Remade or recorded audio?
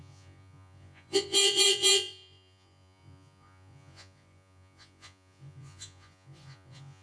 remade